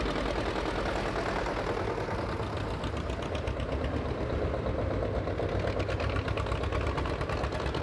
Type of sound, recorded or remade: recorded